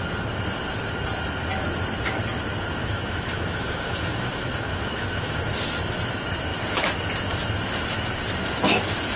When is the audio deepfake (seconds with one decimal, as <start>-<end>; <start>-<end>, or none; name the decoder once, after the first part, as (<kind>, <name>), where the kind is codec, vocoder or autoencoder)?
2.8-5.4 (autoencoder, DAC-VAE)